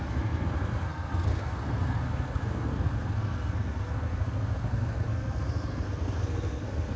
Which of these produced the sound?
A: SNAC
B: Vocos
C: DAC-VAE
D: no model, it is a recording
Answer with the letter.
A